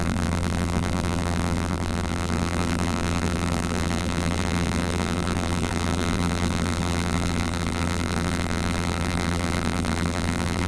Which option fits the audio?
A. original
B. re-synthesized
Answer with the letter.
B